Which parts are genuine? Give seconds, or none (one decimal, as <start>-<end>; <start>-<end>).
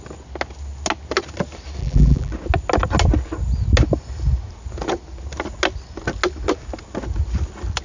0.0-1.8; 2.3-7.8